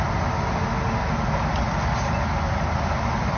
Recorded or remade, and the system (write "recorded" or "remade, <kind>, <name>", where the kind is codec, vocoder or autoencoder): recorded